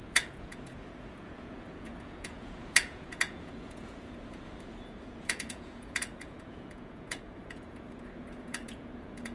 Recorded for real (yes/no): no